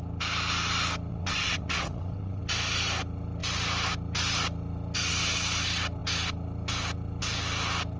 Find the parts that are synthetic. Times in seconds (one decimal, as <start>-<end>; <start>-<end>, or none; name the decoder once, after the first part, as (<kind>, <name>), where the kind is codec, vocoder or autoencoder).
1.1-2.4 (vocoder, WaveNeXt)

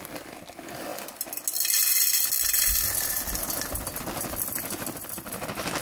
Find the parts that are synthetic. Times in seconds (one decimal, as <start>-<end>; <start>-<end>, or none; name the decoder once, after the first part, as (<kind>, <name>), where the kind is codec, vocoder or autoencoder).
none

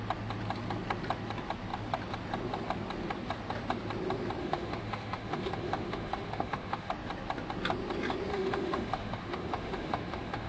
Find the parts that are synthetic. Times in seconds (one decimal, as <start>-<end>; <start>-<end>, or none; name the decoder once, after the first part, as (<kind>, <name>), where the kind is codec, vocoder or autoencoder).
4.4-6.9 (autoencoder, DAC-VAE); 8.3-10.5

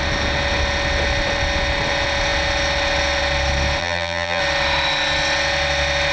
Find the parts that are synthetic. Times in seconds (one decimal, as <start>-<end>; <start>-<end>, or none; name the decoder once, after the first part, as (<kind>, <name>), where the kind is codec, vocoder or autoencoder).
3.8-4.4 (vocoder, BigVGAN v2)

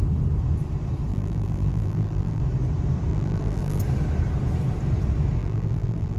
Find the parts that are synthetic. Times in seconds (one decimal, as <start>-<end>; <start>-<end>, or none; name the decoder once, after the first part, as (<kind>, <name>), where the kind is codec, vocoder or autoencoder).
1.1-2.4 (vocoder, BigVGAN v2); 3.1-3.8; 5.4-6.2